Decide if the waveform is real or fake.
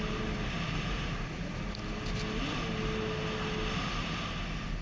real